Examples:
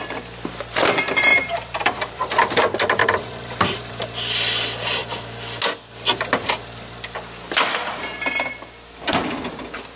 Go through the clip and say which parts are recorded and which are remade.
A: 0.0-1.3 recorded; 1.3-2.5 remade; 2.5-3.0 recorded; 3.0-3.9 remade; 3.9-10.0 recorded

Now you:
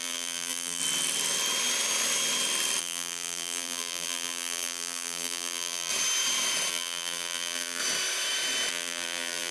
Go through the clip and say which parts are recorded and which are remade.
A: 0.0-0.8 remade; 0.8-2.8 recorded; 2.8-5.9 remade; 5.9-6.7 recorded; 6.7-7.8 remade; 7.8-8.7 recorded; 8.7-9.5 remade

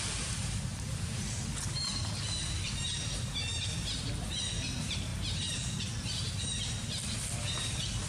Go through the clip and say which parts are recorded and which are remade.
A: 0.0-0.7 recorded; 0.7-1.2 remade; 1.2-1.9 recorded; 1.9-3.2 remade; 3.2-8.1 recorded

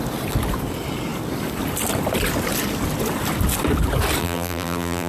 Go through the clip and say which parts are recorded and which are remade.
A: 0.0-4.2 recorded; 4.2-5.1 remade

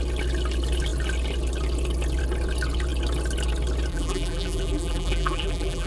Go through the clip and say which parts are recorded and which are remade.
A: 0.0-3.9 recorded; 3.9-5.9 remade

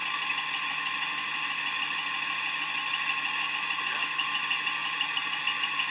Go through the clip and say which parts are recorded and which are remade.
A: 0.0-4.8 recorded; 4.8-5.4 remade; 5.4-5.9 recorded

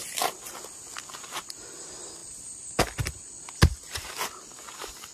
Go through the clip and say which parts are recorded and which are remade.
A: 0.0-5.1 recorded

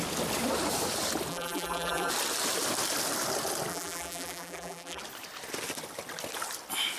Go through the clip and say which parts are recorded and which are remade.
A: 0.0-1.3 recorded; 1.3-2.1 remade; 2.1-3.7 recorded; 3.7-5.0 remade; 5.0-7.0 recorded